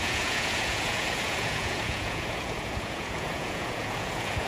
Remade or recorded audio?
remade